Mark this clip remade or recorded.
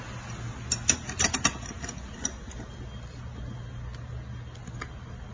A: recorded